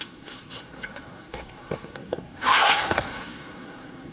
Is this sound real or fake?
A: fake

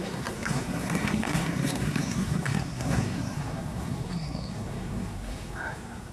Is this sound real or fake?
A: fake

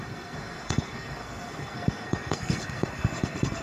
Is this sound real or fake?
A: fake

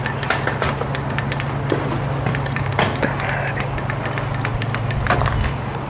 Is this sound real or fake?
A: real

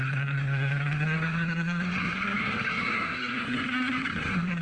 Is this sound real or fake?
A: fake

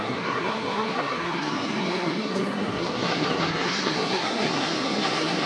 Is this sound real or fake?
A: fake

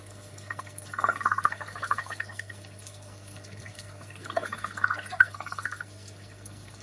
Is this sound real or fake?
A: fake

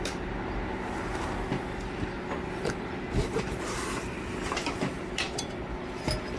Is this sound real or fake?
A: real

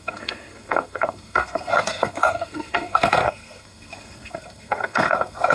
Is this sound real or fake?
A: fake